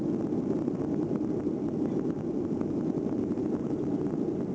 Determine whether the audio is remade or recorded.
recorded